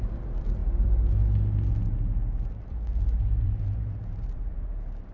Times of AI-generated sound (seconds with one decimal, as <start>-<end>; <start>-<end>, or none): 0.0-0.6; 3.4-5.1